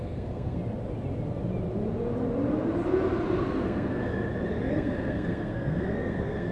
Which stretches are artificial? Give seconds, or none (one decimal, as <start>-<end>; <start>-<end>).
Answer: 0.0-0.6; 3.4-4.1; 4.7-6.5